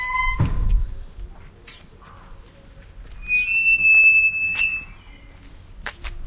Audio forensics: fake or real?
real